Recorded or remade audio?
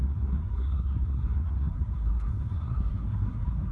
remade